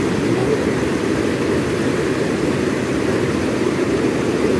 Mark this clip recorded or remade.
recorded